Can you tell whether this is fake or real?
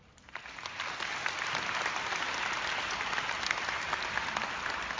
real